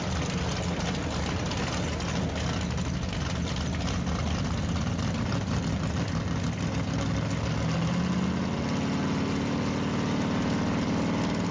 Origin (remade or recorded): recorded